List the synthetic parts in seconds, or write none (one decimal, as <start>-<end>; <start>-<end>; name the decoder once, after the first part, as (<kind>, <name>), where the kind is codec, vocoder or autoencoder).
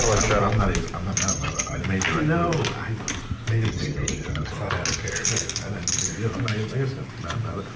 1.3-1.8 (vocoder, HiFi-GAN); 3.7-4.5